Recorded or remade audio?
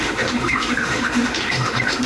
remade